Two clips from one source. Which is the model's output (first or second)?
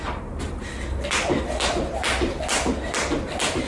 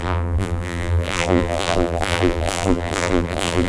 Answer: second